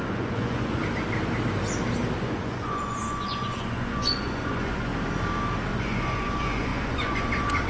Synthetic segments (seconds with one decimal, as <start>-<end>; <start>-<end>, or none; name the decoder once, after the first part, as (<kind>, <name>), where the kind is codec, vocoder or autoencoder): 0.0-0.8 (vocoder, Vocos); 2.2-4.9; 5.7-7.7

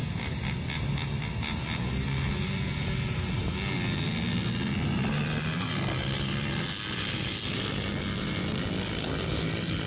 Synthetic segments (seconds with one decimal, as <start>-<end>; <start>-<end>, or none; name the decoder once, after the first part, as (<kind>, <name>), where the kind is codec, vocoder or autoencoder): none

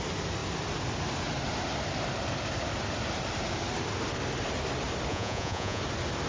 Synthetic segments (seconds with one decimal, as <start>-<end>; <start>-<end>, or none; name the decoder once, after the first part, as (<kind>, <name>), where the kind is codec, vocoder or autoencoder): 5.1-5.8 (vocoder, Vocos)

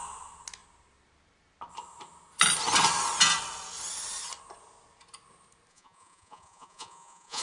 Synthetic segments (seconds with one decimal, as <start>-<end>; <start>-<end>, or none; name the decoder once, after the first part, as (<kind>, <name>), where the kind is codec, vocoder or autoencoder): 5.7-7.4 (vocoder, Vocos)

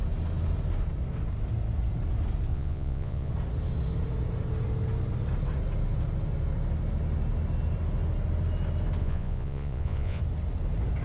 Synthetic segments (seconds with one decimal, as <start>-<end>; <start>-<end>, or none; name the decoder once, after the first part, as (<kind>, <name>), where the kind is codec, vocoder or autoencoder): 2.5-3.3 (vocoder, Vocos); 9.0-10.2